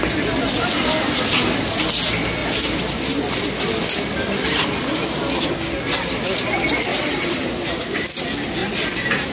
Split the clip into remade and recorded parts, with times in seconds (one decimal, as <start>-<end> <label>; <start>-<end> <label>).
0.0-2.4 recorded; 2.4-3.6 remade; 3.6-6.9 recorded; 6.9-8.1 remade; 8.1-8.6 recorded; 8.6-9.3 remade